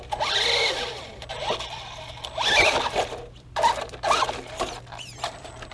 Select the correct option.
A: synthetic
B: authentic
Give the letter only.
A